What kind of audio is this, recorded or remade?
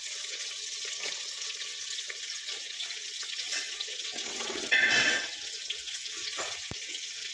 remade